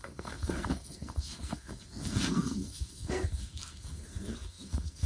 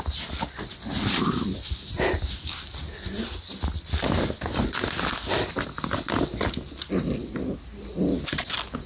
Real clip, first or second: second